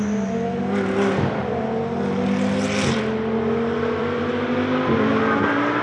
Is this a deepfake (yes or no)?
no